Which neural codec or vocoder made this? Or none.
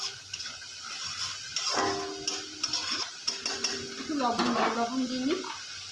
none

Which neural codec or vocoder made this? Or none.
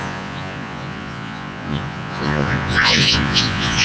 vocoder, Vocos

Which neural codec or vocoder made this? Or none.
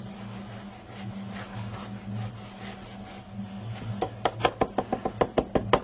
none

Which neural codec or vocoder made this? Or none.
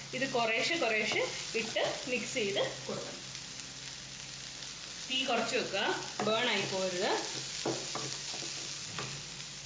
none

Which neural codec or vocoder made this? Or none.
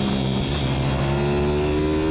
none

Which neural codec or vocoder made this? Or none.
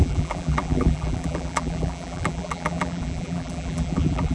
vocoder, BigVGAN v2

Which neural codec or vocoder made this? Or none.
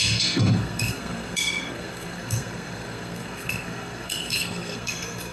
codec, SNAC